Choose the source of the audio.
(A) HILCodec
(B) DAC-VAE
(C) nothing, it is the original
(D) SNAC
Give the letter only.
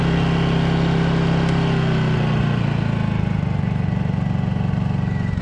C